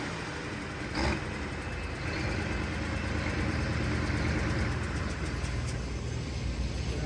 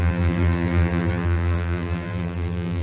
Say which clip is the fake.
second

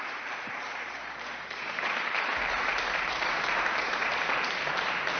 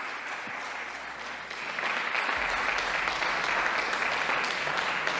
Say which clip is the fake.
first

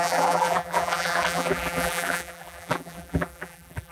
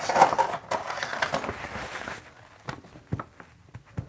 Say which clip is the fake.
first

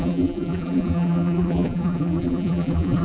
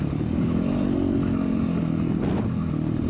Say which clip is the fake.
first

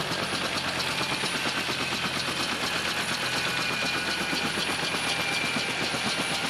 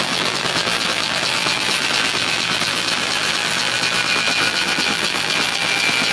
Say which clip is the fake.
second